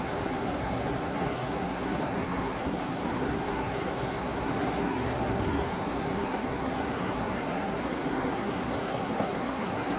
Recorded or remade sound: remade